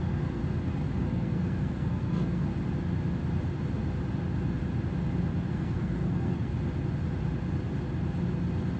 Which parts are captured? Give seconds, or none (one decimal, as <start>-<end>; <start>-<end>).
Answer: 0.4-1.0; 2.5-5.5; 6.5-8.8